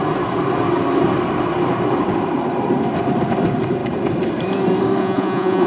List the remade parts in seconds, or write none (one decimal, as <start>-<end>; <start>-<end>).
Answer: 5.0-5.7